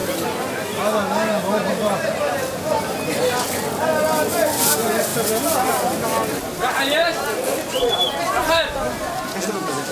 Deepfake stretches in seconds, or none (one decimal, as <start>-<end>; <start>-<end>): none